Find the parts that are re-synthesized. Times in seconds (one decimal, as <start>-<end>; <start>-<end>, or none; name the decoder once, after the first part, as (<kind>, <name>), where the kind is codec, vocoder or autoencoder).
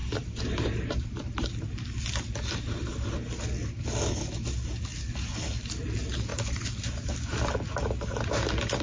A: 0.0-3.2 (vocoder, BigVGAN v2); 6.3-7.1